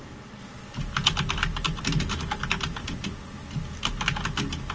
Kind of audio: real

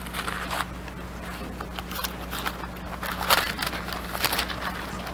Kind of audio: real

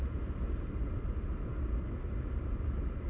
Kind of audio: real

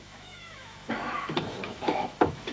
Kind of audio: fake